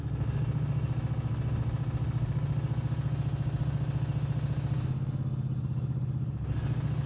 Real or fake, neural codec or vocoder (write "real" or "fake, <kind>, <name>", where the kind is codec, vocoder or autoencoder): real